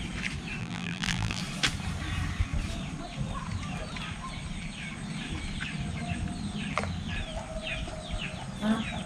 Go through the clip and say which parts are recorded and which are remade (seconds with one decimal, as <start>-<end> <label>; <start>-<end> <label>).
0.0-0.6 recorded; 0.6-1.4 remade; 1.4-9.1 recorded